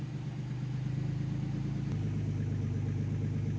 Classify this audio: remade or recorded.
recorded